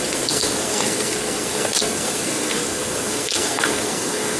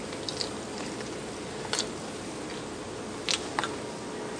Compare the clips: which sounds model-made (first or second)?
first